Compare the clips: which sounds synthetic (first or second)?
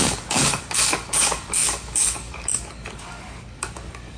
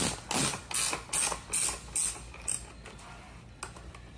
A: first